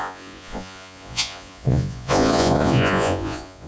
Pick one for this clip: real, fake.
fake